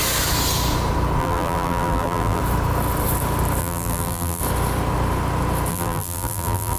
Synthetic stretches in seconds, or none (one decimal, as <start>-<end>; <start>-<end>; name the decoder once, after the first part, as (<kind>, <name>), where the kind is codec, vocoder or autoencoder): 1.2-2.4 (vocoder, BigVGAN v2); 3.6-4.4; 5.7-6.8